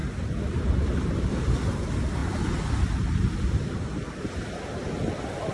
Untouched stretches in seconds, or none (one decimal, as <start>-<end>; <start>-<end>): 1.5-5.5